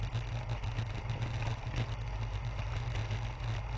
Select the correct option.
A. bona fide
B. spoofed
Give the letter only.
A